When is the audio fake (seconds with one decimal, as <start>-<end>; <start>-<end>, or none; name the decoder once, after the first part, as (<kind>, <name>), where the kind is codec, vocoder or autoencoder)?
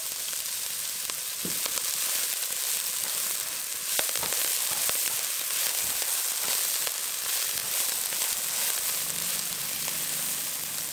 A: none